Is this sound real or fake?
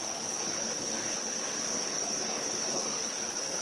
fake